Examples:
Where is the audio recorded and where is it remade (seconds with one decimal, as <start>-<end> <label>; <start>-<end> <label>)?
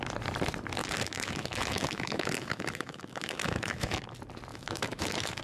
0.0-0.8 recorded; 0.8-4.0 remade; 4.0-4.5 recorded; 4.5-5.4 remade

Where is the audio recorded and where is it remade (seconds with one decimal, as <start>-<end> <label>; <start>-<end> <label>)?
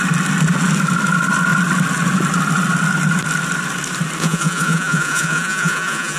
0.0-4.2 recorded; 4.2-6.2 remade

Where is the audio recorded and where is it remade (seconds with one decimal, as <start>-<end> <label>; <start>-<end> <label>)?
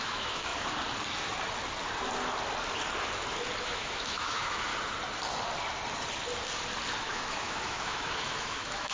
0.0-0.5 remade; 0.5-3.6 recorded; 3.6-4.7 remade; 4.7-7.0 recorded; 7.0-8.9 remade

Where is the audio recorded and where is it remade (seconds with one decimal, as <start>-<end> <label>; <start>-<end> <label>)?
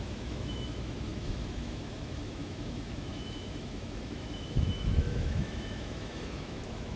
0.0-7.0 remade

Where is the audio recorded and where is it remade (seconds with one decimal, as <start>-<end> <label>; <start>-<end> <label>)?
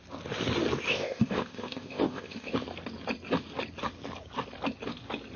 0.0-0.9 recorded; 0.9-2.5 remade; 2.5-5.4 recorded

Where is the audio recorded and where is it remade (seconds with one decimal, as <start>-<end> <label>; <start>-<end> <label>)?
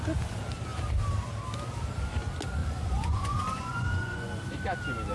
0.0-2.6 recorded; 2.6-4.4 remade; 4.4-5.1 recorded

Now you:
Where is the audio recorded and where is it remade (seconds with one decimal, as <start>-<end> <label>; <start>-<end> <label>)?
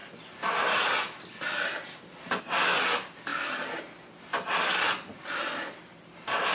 0.0-6.5 recorded